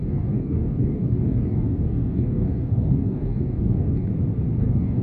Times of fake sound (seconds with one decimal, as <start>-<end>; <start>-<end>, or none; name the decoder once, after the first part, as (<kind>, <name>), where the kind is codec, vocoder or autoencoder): 0.0-4.1 (codec, DAC); 4.6-5.0